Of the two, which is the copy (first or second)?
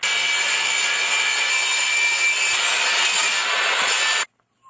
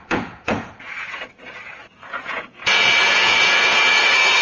second